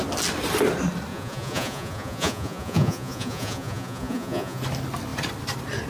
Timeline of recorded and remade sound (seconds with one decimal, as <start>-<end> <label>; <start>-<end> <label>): 0.0-1.1 recorded; 1.1-4.6 remade; 4.6-5.9 recorded